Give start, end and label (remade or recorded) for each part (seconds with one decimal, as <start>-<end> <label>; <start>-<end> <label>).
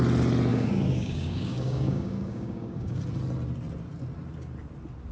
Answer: 0.0-0.5 recorded; 0.5-3.0 remade; 3.0-5.1 recorded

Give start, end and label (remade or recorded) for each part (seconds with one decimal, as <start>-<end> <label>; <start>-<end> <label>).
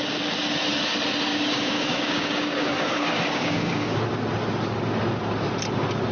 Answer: 0.0-1.3 recorded; 1.3-4.0 remade; 4.0-6.1 recorded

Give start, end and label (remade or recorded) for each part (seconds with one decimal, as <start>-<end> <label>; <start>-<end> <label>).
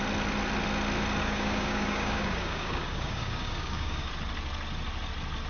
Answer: 0.0-1.2 recorded; 1.2-4.1 remade; 4.1-5.5 recorded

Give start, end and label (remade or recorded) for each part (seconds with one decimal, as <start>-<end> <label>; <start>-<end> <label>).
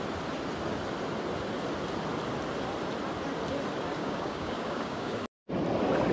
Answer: 0.0-4.0 recorded; 4.0-5.5 remade; 5.5-6.1 recorded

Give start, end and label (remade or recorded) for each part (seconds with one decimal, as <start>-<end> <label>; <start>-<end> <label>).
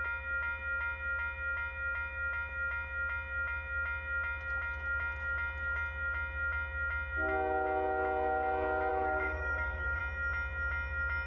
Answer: 0.0-8.9 recorded; 8.9-10.0 remade; 10.0-11.3 recorded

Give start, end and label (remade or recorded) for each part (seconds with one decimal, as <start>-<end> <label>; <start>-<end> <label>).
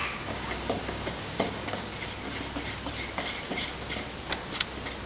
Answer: 0.0-1.9 remade; 1.9-5.1 recorded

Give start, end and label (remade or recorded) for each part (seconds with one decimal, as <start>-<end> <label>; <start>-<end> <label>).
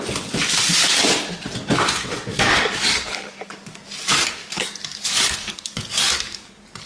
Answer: 0.0-2.3 recorded; 2.3-3.8 remade; 3.8-4.4 recorded; 4.4-6.5 remade; 6.5-6.9 recorded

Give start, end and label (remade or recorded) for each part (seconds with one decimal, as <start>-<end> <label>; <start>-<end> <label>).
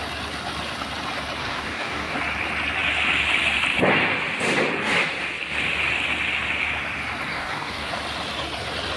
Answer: 0.0-1.4 recorded; 1.4-2.2 remade; 2.2-7.3 recorded; 7.3-7.9 remade; 7.9-9.0 recorded